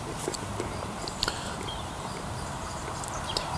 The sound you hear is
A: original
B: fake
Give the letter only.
B